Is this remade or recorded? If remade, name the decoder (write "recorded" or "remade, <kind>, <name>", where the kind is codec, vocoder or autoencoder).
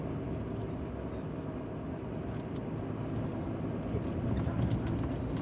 recorded